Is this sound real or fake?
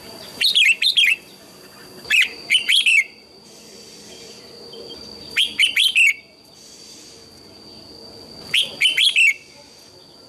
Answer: fake